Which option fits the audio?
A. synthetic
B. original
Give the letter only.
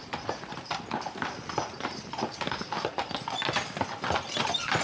B